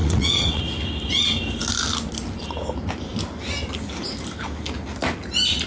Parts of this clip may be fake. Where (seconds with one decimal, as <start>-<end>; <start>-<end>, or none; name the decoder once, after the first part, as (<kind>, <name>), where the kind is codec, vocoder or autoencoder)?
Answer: 0.0-0.6 (vocoder, WaveNeXt)